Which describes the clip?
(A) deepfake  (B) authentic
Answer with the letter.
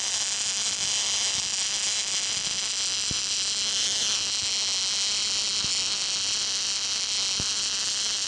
B